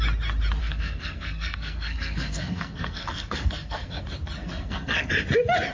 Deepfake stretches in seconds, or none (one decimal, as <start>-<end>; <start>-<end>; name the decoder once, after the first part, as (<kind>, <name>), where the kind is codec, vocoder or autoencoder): 0.6-4.0 (codec, SNAC); 4.4-5.1